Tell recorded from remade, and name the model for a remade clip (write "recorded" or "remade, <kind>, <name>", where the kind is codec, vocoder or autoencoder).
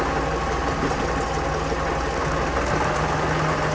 recorded